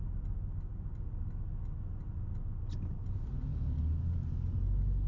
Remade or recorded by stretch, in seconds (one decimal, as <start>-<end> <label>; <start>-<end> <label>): 0.0-5.1 recorded